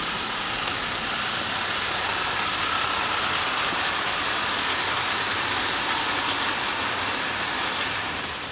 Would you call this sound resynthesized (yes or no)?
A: no